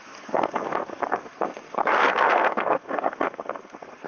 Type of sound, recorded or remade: remade